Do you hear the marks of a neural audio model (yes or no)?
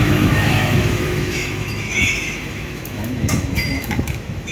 yes